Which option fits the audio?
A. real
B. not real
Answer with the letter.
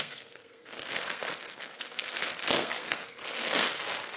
B